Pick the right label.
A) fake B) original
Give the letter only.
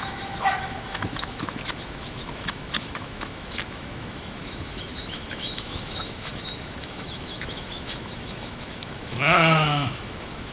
A